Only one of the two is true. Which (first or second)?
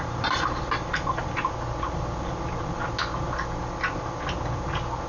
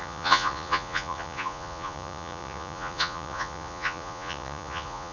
first